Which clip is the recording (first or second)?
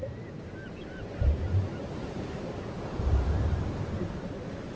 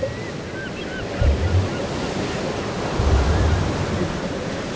second